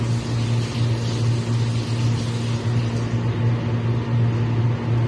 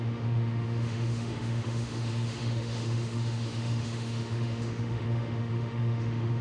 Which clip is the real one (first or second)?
first